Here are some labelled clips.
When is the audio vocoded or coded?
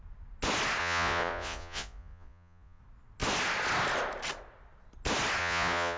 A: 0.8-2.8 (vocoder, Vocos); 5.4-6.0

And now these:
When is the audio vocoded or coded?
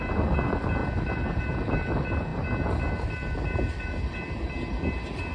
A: none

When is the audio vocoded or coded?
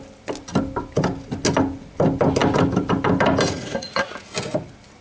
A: 3.5-4.2 (vocoder, Vocos)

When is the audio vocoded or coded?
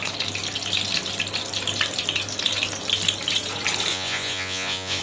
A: 3.9-5.0 (vocoder, Vocos)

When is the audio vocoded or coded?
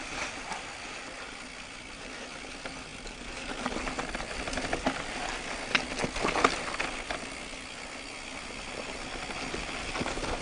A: none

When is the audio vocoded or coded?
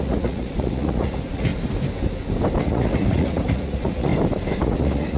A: 0.0-1.5 (vocoder, Vocos); 2.6-4.1; 4.6-5.2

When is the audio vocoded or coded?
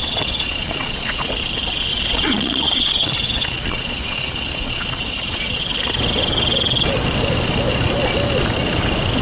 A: 0.0-1.3 (vocoder, Vocos); 1.9-5.6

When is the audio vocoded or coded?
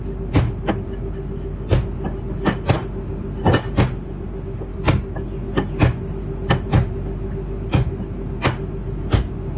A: none